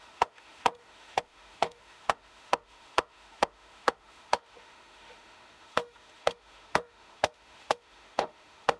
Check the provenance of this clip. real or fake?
fake